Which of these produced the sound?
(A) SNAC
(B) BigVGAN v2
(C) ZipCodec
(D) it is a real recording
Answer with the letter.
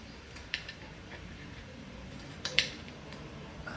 B